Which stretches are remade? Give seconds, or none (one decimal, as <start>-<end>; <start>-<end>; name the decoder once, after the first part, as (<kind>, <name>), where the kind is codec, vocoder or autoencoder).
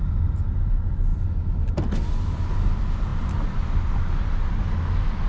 none